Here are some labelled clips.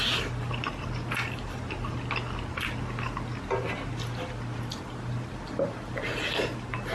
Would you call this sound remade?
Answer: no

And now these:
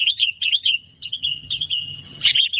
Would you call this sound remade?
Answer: yes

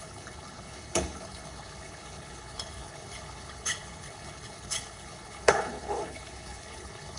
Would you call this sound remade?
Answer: yes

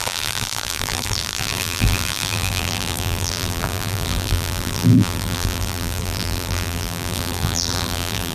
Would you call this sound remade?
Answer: yes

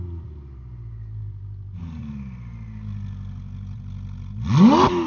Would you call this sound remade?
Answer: no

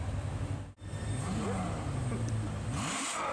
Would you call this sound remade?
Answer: no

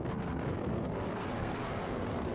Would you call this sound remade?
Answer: yes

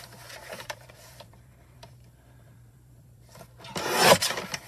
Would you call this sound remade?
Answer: yes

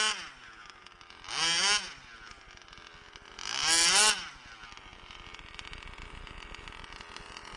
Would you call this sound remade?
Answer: no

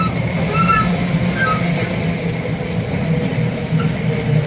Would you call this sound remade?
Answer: no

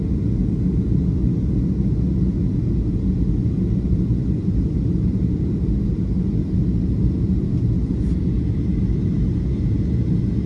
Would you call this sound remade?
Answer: no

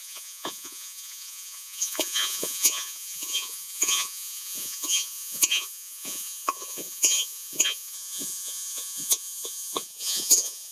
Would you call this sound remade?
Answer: yes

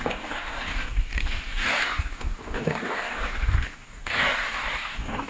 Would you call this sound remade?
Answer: yes